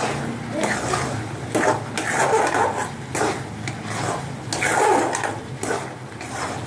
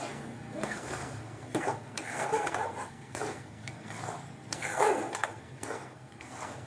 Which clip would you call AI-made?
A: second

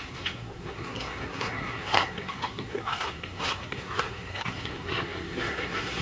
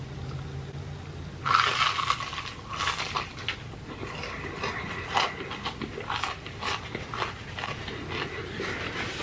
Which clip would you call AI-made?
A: first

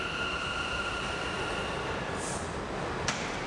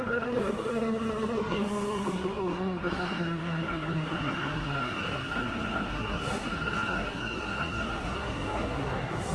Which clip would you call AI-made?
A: second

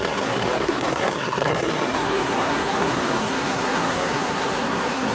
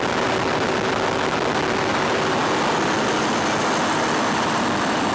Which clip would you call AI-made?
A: first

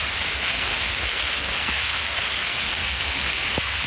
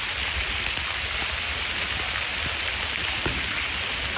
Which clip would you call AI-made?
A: first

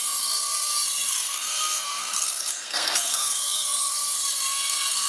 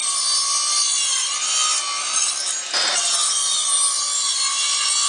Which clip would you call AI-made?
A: first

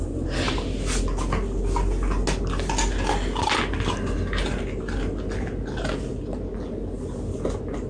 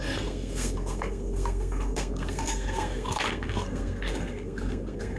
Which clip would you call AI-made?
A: second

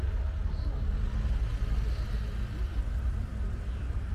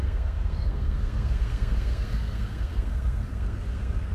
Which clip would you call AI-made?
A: second